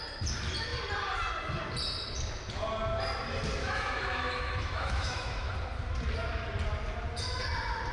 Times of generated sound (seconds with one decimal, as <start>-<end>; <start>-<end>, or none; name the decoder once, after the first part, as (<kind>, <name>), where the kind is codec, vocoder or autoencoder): 3.6-5.5 (autoencoder, DAC-VAE)